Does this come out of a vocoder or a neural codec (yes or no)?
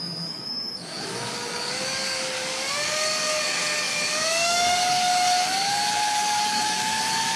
yes